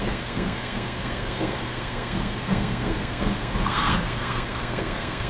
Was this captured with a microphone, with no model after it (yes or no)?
no